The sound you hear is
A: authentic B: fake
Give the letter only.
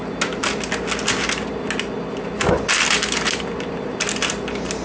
A